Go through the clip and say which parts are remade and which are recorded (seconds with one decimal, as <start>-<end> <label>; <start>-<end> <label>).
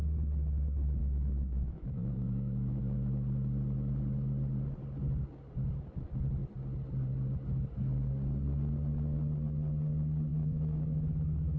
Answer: 0.0-1.0 recorded; 1.0-2.8 remade; 2.8-10.3 recorded; 10.3-11.6 remade